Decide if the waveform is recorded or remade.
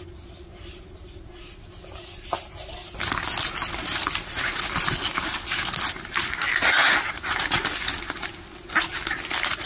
recorded